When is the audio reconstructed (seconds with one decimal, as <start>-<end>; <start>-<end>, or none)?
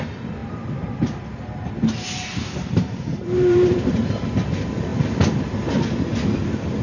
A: 3.1-4.1